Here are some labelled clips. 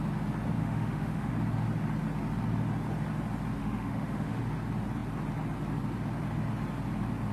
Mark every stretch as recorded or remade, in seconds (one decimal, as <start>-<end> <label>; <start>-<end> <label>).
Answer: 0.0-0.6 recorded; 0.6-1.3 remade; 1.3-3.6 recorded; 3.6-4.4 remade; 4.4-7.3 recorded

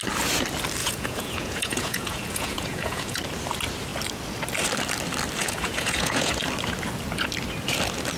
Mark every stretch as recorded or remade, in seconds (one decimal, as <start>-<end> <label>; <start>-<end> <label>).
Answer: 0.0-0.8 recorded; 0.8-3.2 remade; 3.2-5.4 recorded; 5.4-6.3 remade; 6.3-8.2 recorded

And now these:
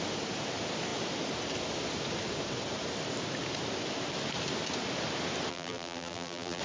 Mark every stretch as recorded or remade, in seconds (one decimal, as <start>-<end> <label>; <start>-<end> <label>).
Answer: 0.0-5.5 recorded; 5.5-6.6 remade

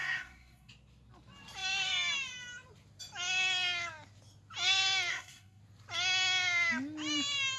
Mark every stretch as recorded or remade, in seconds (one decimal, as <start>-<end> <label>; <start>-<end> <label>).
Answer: 0.0-0.7 remade; 0.7-5.1 recorded; 5.1-5.6 remade; 5.6-7.6 recorded